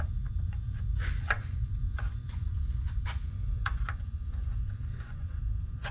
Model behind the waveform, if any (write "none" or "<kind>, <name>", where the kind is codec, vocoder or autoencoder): vocoder, Vocos